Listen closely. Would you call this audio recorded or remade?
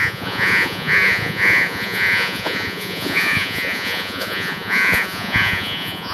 remade